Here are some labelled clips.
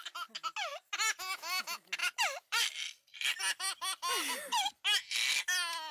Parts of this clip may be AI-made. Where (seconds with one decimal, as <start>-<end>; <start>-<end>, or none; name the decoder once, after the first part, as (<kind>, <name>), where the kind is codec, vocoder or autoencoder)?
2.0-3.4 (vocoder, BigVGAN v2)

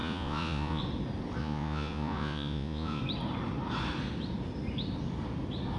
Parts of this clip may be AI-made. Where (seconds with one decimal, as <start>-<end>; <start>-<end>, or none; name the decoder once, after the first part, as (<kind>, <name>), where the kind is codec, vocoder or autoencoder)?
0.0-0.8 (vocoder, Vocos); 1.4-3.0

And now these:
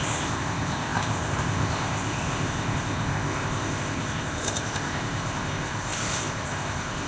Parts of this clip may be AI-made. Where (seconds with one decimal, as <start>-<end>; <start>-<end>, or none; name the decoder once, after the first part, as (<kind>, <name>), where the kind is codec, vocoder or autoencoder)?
0.0-7.1 (codec, ZipCodec)

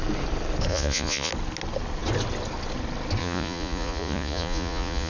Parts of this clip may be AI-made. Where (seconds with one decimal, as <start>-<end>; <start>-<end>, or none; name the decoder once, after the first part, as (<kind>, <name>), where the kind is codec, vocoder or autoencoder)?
0.7-1.3 (vocoder, Vocos); 3.2-5.1

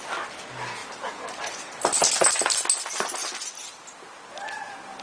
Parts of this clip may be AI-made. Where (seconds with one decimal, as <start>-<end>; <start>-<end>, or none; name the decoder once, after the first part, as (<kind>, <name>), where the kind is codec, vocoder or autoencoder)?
0.8-1.5 (vocoder, BigVGAN v2)

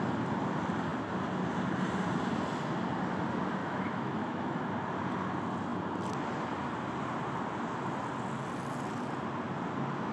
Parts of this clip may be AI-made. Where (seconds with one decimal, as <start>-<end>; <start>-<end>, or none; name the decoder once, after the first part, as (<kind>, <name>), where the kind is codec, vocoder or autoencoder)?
3.6-4.6 (autoencoder, DAC-VAE)

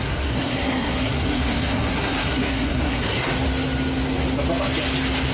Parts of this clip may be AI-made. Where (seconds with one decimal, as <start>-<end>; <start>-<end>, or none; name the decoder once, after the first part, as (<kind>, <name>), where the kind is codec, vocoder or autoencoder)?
0.0-3.3 (codec, SNAC)